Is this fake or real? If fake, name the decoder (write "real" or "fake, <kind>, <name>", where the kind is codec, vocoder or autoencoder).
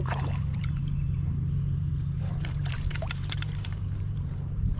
fake, vocoder, BigVGAN v2